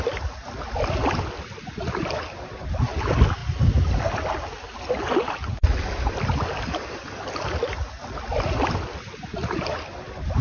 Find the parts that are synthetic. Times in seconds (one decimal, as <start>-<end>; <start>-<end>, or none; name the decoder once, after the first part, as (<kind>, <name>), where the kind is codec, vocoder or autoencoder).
none